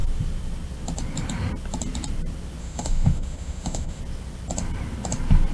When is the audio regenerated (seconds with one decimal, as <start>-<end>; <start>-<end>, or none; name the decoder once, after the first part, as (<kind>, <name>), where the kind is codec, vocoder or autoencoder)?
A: 2.6-4.0 (autoencoder, DAC-VAE)